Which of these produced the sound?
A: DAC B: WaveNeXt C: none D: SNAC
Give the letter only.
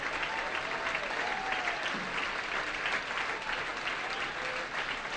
C